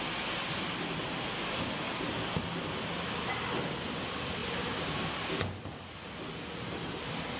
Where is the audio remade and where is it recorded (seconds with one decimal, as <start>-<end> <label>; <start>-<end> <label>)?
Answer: 0.0-4.4 recorded; 4.4-5.3 remade; 5.3-7.4 recorded